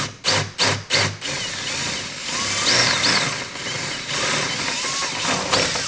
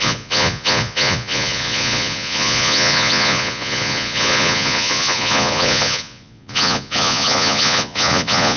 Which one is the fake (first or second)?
second